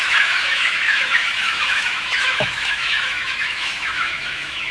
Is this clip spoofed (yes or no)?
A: yes